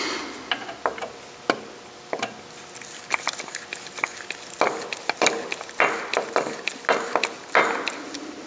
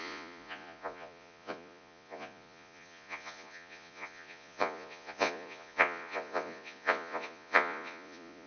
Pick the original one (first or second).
first